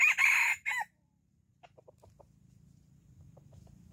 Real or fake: fake